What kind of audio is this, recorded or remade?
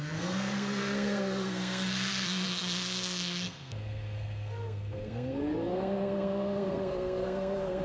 remade